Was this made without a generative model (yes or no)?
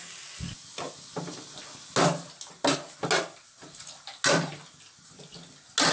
yes